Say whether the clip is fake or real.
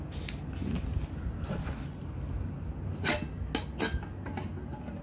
real